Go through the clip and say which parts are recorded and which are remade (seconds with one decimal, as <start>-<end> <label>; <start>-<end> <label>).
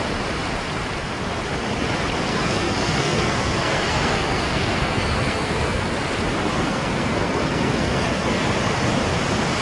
0.0-2.3 recorded; 2.3-5.9 remade; 5.9-6.5 recorded; 6.5-8.4 remade; 8.4-9.6 recorded